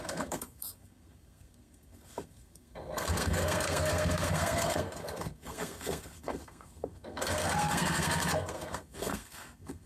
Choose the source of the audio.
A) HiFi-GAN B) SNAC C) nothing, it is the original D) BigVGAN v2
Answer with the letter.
B